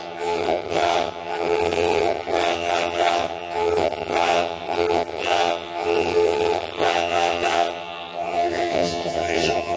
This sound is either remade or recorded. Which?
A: remade